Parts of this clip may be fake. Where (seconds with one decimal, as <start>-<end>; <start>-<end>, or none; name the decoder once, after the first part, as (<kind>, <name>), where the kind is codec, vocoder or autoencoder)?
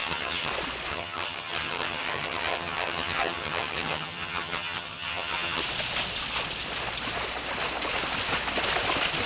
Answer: 0.0-0.5 (vocoder, HiFi-GAN); 0.9-5.6